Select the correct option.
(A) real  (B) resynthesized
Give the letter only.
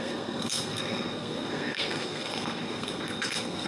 B